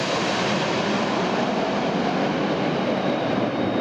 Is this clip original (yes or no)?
yes